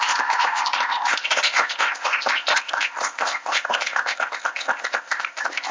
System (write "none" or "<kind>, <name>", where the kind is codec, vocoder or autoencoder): codec, ZipCodec